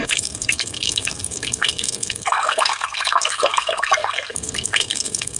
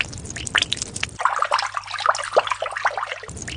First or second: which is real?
second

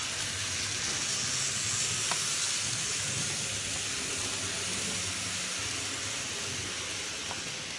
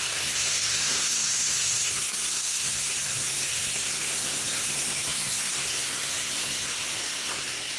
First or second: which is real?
first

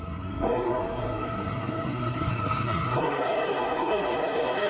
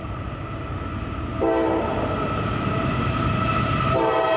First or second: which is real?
second